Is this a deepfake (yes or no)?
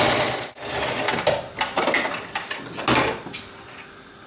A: no